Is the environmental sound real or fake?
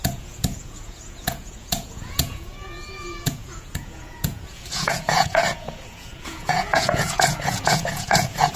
fake